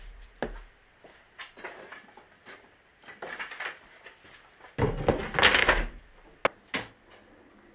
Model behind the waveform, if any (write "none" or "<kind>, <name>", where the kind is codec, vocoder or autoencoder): none